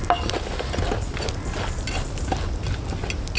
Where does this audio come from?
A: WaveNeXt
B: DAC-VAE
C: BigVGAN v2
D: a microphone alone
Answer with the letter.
D